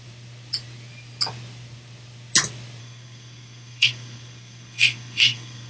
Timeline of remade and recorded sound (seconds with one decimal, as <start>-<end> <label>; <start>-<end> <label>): 0.0-2.8 recorded; 2.8-5.7 remade